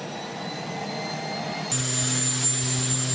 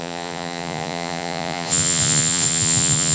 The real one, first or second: first